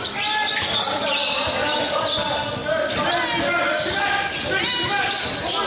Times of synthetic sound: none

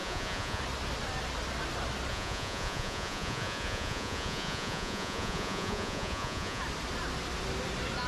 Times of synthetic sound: 0.0-0.6 (vocoder, Vocos); 2.1-6.6